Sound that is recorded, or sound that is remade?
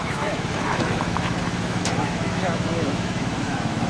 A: remade